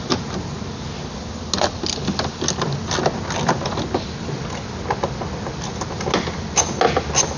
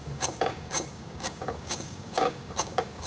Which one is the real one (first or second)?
first